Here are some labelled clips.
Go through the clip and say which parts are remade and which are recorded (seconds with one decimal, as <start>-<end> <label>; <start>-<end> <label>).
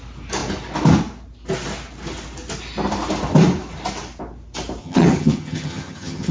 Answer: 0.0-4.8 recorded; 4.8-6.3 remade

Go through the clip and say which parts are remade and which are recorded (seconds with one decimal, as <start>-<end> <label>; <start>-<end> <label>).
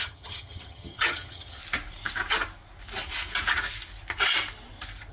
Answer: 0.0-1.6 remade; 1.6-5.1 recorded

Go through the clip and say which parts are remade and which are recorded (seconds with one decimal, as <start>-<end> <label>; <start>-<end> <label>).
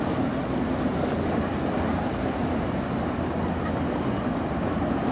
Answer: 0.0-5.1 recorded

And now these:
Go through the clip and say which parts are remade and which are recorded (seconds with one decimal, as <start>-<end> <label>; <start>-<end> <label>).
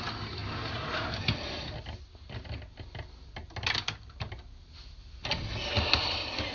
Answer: 0.0-6.5 recorded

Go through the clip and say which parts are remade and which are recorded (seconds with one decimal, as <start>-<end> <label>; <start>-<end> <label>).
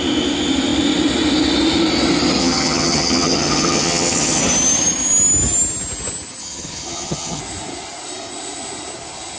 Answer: 0.0-2.4 recorded; 2.4-4.4 remade; 4.4-6.4 recorded; 6.4-7.4 remade; 7.4-9.4 recorded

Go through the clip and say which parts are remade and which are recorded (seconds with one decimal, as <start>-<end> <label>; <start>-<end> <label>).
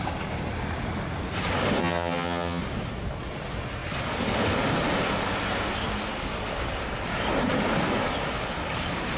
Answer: 0.0-1.8 recorded; 1.8-2.6 remade; 2.6-9.2 recorded